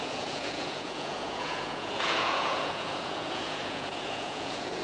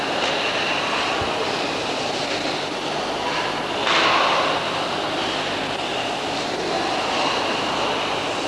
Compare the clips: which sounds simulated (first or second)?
first